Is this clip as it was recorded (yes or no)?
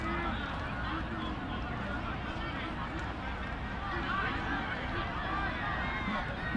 yes